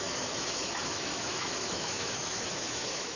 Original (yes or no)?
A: no